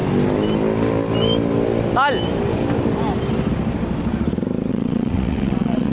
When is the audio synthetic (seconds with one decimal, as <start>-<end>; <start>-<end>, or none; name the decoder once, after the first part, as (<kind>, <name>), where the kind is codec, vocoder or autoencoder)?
4.7-5.9 (vocoder, WaveNeXt)